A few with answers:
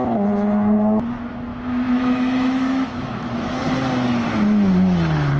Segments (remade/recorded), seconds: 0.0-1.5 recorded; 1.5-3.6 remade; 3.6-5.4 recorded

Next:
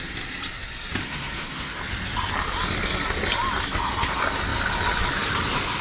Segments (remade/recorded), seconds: 0.0-1.0 recorded; 1.0-1.8 remade; 1.8-5.8 recorded

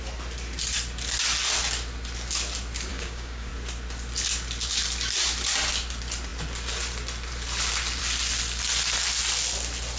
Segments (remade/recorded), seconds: 0.0-2.9 recorded; 2.9-3.5 remade; 3.5-10.0 recorded

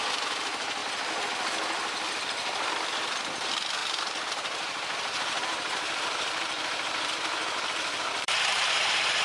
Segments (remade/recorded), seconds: 0.0-3.8 recorded; 3.8-9.2 remade

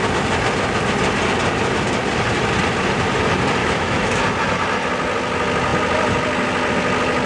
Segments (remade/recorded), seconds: 0.0-3.6 recorded; 3.6-4.2 remade; 4.2-7.3 recorded

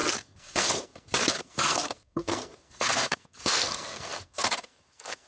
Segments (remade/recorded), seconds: 0.0-5.3 remade

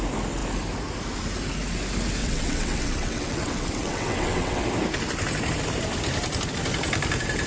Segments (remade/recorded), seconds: 0.0-2.2 recorded; 2.2-4.6 remade; 4.6-7.5 recorded